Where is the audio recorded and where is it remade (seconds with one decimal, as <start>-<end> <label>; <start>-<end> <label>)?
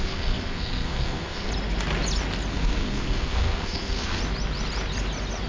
0.0-1.5 remade; 1.5-2.5 recorded; 2.5-4.2 remade; 4.2-5.5 recorded